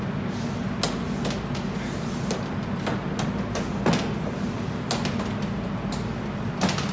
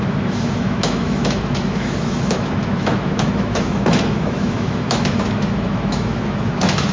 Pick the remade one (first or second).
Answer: second